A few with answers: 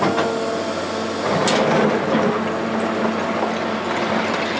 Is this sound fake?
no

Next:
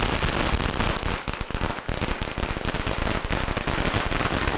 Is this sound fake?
no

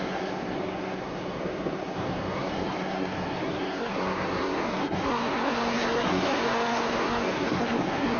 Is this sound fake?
yes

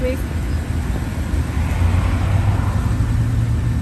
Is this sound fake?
no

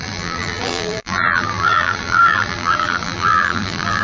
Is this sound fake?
yes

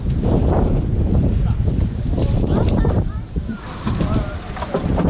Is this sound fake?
yes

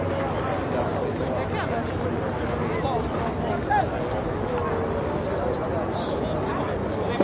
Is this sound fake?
no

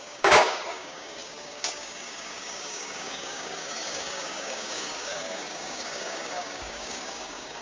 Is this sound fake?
yes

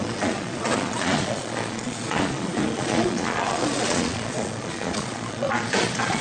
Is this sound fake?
yes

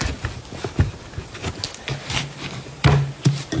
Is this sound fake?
no